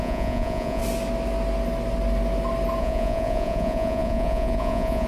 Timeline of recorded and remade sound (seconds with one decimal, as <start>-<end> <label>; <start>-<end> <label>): 0.0-0.8 remade; 0.8-2.8 recorded; 2.8-5.1 remade